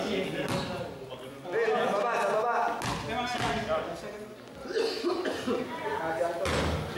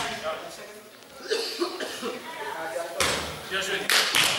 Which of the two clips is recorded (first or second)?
first